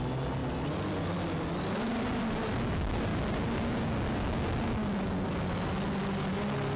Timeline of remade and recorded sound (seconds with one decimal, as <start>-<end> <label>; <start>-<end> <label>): 0.0-6.8 recorded